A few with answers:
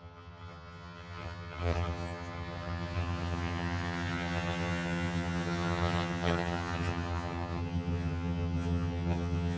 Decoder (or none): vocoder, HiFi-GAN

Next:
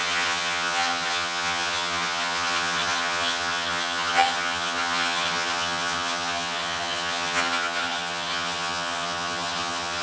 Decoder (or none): vocoder, HiFi-GAN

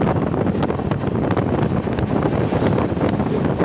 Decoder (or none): none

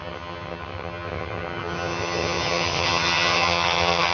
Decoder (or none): vocoder, HiFi-GAN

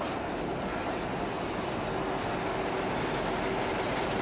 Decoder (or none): none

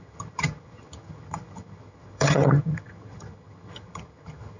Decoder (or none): vocoder, HiFi-GAN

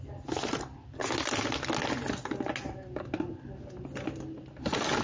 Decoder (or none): none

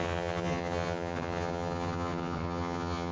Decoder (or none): vocoder, HiFi-GAN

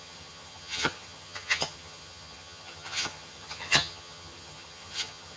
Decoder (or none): vocoder, HiFi-GAN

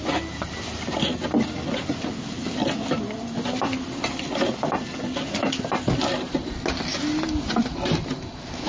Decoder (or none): none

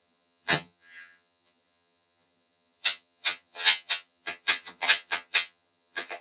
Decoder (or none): vocoder, HiFi-GAN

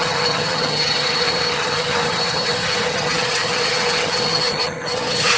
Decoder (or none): vocoder, HiFi-GAN